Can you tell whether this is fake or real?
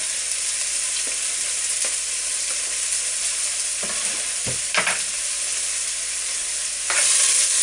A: real